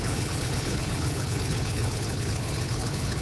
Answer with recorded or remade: remade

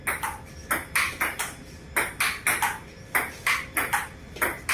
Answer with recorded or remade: recorded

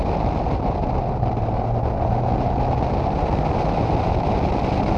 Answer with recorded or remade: recorded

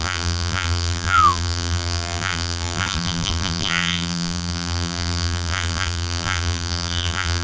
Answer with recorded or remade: remade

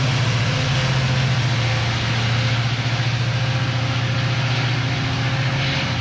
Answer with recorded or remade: recorded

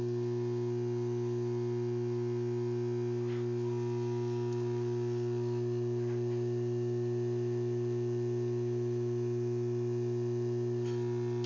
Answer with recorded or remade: recorded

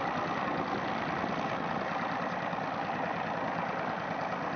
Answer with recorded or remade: recorded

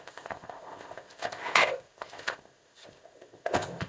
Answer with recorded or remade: remade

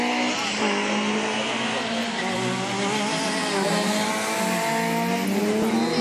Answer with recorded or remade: recorded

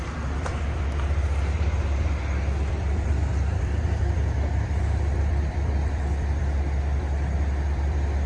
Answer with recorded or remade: remade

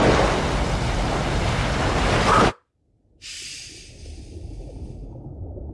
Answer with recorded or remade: recorded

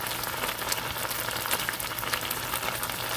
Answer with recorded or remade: recorded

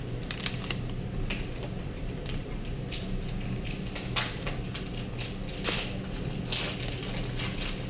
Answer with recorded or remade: recorded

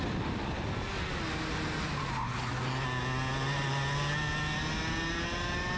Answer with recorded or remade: recorded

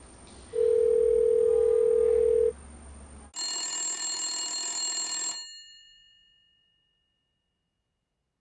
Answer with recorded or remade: recorded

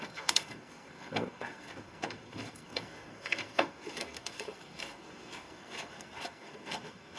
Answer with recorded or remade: remade